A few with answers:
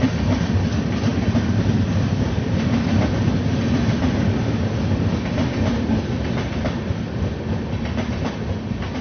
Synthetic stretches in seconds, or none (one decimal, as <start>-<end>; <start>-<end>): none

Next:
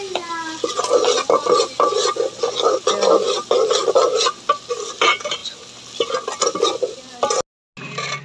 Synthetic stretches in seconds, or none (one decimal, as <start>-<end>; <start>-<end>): none

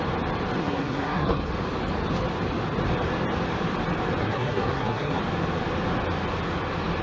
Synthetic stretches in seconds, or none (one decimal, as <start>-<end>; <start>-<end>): 0.6-1.5; 4.2-5.2